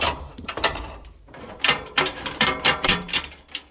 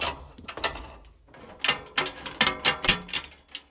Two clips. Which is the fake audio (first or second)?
first